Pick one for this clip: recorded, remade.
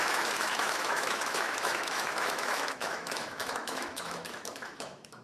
remade